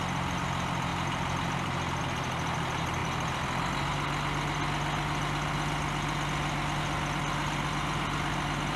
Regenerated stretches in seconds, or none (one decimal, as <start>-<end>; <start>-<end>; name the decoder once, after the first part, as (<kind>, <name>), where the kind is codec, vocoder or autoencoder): none